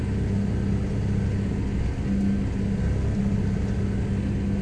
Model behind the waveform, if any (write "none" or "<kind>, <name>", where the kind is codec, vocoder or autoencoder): none